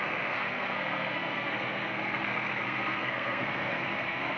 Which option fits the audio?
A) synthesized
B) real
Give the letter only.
A